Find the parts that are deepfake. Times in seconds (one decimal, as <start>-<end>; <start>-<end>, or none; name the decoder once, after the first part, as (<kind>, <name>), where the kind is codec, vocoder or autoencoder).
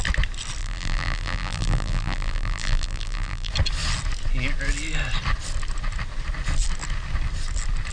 0.6-3.5 (vocoder, BigVGAN v2)